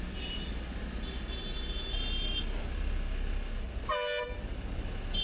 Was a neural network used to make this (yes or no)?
no